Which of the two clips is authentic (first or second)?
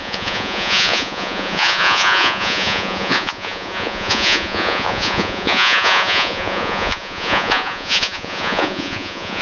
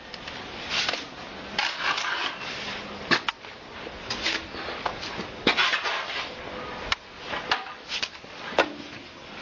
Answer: second